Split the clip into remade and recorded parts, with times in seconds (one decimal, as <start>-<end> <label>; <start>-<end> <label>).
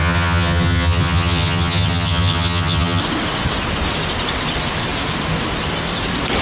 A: 0.0-3.0 remade; 3.0-6.4 recorded